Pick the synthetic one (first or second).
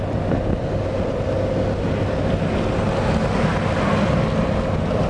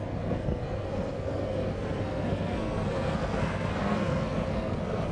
second